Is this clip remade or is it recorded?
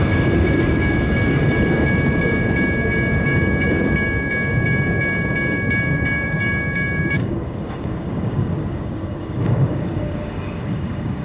remade